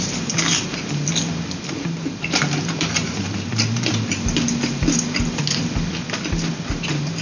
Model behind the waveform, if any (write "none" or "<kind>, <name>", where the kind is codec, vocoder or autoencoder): none